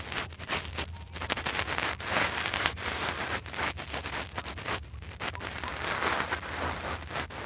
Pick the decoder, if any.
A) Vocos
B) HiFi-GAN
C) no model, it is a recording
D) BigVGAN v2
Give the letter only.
C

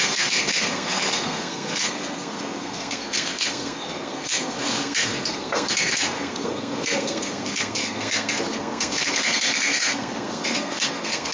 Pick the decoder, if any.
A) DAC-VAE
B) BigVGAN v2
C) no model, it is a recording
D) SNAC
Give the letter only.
D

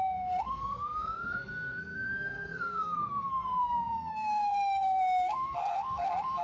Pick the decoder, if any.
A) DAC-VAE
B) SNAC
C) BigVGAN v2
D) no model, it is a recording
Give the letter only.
B